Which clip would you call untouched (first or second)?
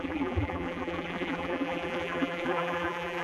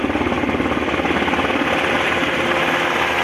second